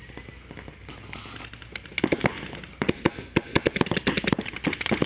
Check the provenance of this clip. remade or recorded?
recorded